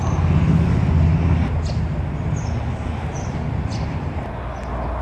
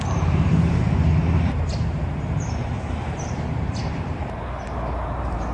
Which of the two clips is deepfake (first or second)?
second